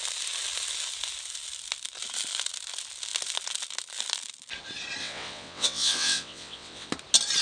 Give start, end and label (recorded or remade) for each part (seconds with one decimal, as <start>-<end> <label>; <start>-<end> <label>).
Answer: 0.0-5.0 recorded; 5.0-6.9 remade; 6.9-7.4 recorded